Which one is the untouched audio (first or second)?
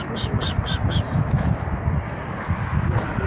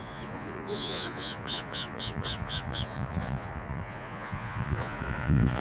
first